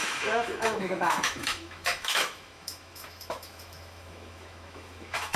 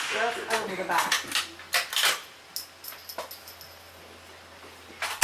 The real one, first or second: second